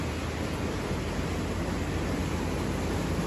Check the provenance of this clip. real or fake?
real